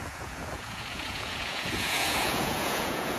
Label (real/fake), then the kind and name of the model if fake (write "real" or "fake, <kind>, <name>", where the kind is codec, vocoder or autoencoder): fake, vocoder, Vocos